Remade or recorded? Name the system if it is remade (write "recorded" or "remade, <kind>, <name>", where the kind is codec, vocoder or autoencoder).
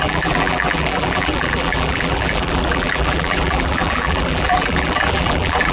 remade, vocoder, BigVGAN v2